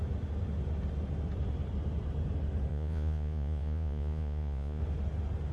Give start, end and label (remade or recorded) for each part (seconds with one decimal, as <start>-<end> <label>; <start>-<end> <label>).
0.0-2.7 recorded; 2.7-4.8 remade; 4.8-5.5 recorded